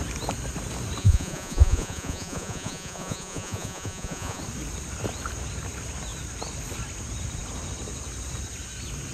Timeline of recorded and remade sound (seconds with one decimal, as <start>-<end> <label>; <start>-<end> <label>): 0.0-1.0 recorded; 1.0-4.4 remade; 4.4-9.1 recorded